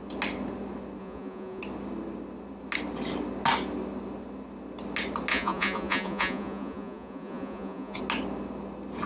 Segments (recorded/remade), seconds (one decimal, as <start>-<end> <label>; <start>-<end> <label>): 0.0-1.0 recorded; 1.0-1.6 remade; 1.6-5.3 recorded; 5.3-8.0 remade; 8.0-9.1 recorded